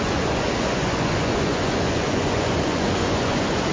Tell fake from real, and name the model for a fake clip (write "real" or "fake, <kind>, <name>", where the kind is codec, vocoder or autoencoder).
fake, vocoder, Vocos